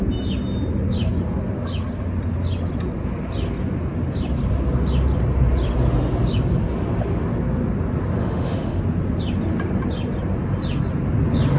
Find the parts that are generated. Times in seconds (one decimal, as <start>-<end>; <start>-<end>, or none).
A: 8.2-8.8